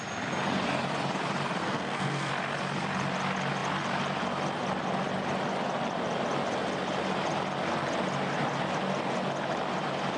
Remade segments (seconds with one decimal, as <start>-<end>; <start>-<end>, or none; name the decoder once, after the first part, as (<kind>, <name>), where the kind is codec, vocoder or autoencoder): 1.6-2.3 (codec, SNAC)